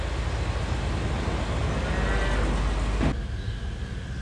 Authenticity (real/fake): real